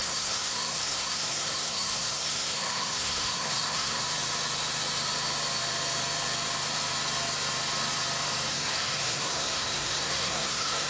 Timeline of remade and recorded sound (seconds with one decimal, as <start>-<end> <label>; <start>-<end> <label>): 0.0-4.0 remade; 4.0-8.5 recorded; 8.5-10.9 remade

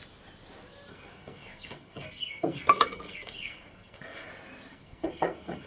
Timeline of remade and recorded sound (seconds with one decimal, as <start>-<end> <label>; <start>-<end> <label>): 0.0-0.9 recorded; 0.9-4.3 remade; 4.3-4.7 recorded; 4.7-5.7 remade

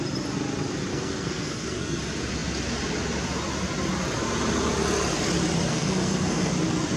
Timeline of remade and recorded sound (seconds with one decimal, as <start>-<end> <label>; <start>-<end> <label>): 0.0-0.9 recorded; 0.9-2.0 remade; 2.0-5.7 recorded; 5.7-6.5 remade; 6.5-7.0 recorded

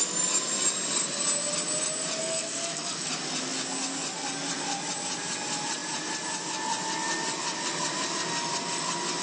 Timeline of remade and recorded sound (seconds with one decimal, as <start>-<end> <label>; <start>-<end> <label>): 0.0-2.2 recorded; 2.2-3.1 remade; 3.1-9.2 recorded